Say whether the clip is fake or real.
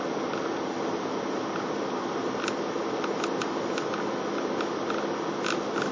real